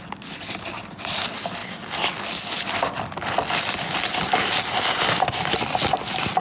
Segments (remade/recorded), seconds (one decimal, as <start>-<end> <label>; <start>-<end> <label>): 0.0-6.4 recorded